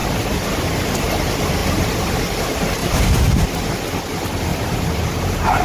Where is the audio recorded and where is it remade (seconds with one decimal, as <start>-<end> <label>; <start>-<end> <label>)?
0.0-0.6 remade; 0.6-4.5 recorded; 4.5-5.6 remade